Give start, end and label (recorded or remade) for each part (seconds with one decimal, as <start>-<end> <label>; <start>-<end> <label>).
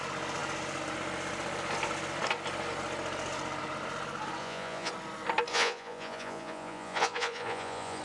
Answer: 0.0-4.4 recorded; 4.4-4.9 remade; 4.9-5.5 recorded; 5.5-8.0 remade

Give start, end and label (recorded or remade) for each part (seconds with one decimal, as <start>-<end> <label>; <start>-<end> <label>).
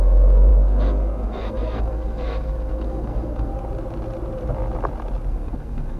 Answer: 0.0-3.5 remade; 3.5-5.3 recorded; 5.3-6.0 remade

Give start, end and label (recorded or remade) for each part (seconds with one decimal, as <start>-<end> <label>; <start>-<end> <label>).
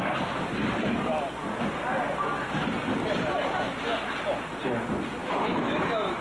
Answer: 0.0-5.2 recorded; 5.2-6.2 remade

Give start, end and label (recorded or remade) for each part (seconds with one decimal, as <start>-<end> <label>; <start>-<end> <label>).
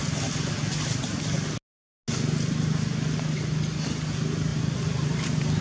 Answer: 0.0-4.5 recorded; 4.5-5.6 remade